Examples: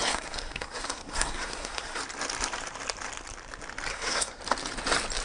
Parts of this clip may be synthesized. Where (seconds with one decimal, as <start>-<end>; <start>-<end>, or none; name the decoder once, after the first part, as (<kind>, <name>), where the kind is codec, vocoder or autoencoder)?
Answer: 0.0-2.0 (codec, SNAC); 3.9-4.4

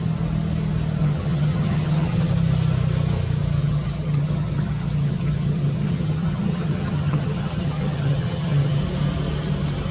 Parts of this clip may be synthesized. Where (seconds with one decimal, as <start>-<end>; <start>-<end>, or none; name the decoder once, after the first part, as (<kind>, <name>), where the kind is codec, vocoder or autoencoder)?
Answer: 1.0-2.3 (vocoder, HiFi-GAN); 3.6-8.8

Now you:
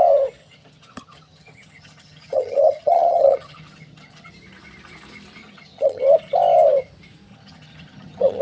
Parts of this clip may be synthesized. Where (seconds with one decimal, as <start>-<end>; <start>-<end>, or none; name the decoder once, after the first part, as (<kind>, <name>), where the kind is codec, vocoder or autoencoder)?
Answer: 0.4-4.3 (vocoder, HiFi-GAN); 5.4-6.0; 7.3-8.4

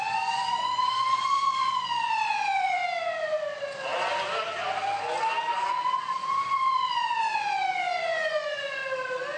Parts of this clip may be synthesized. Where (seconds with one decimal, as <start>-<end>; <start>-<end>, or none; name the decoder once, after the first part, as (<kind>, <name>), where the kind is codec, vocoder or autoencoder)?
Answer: 0.0-2.8 (vocoder, Vocos); 5.6-8.8